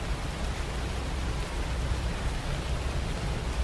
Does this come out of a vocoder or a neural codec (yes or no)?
no